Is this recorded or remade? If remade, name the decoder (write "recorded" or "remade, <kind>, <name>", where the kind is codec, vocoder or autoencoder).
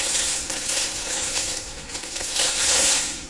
remade, codec, SNAC